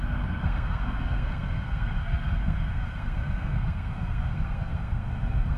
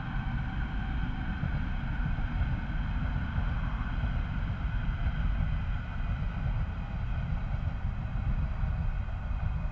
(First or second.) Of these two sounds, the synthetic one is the first